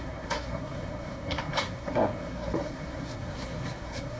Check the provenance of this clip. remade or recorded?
remade